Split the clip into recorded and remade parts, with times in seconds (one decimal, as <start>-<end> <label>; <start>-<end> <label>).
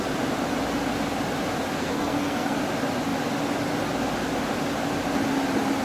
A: 0.0-1.8 recorded; 1.8-2.6 remade; 2.6-5.8 recorded